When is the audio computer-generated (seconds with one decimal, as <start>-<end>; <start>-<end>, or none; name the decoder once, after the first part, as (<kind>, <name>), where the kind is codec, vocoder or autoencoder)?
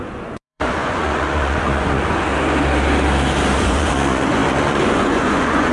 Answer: 0.0-2.3 (vocoder, Vocos); 3.6-5.7